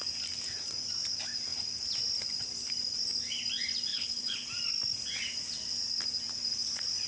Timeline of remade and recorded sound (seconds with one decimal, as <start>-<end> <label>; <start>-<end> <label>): 0.0-3.9 recorded; 3.9-4.5 remade; 4.5-7.1 recorded